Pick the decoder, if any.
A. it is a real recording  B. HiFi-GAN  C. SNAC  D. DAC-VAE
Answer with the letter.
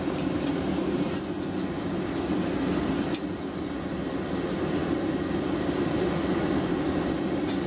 A